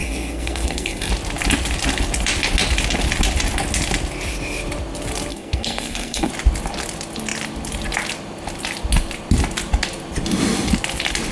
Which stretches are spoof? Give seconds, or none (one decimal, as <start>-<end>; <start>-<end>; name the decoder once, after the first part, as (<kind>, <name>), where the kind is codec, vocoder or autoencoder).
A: 0.0-1.1 (codec, SNAC); 5.3-6.3